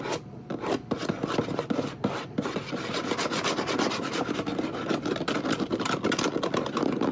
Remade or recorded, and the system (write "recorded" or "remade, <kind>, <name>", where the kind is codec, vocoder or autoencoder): recorded